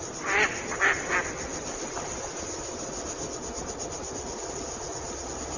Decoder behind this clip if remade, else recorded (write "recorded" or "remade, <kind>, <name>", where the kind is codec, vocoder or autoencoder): recorded